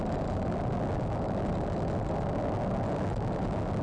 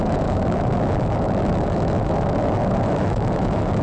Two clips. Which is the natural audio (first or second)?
first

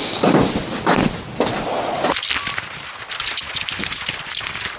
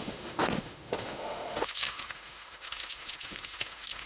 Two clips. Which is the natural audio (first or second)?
first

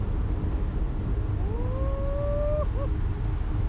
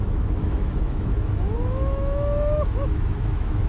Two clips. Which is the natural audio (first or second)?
first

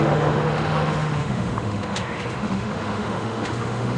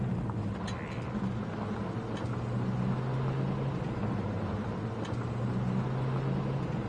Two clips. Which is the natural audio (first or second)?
second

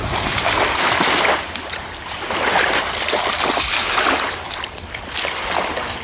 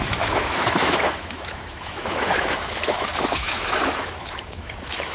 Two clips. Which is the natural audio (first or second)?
first